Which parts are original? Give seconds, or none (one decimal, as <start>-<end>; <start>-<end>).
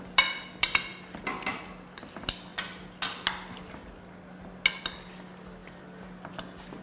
0.0-6.8